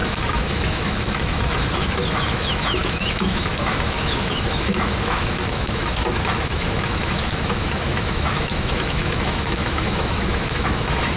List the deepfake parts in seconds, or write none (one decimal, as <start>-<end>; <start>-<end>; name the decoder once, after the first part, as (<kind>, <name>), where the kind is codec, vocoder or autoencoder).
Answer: 0.0-11.2 (autoencoder, DAC-VAE)